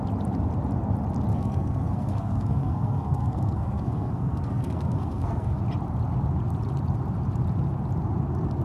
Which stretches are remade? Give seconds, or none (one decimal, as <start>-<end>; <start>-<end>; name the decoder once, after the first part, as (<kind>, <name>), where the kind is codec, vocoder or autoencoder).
1.3-5.6 (codec, SNAC)